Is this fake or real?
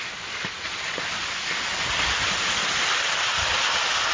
real